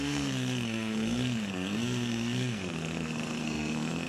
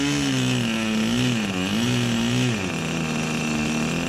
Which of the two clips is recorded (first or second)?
second